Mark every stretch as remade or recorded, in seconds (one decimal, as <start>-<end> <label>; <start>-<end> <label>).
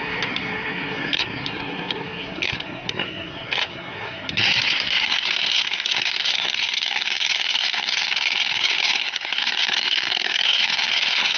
0.0-11.4 remade